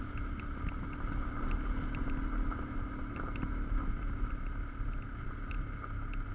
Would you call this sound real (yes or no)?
yes